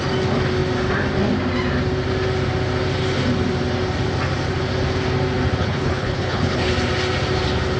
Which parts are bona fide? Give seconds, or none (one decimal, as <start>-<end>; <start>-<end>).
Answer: 0.0-5.6; 6.7-7.8